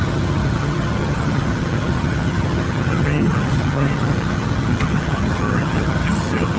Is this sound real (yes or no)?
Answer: no